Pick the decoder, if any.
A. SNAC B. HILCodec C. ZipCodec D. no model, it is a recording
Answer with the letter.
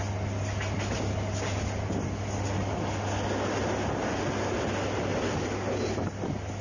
D